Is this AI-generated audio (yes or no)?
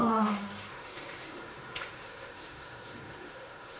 yes